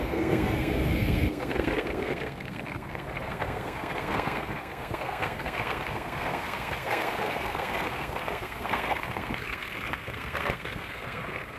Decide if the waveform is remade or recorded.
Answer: remade